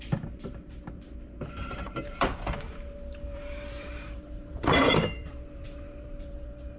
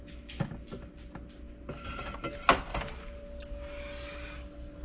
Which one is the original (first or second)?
second